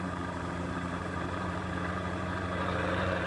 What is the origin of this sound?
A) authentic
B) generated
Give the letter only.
B